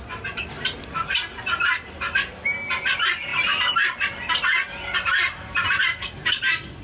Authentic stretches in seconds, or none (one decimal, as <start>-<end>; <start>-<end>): 0.0-6.8